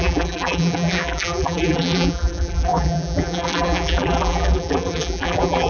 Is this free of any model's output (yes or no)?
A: no